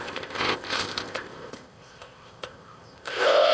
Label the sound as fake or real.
fake